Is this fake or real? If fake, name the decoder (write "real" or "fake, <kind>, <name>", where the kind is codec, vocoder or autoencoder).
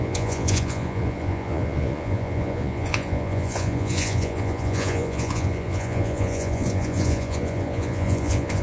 fake, vocoder, Vocos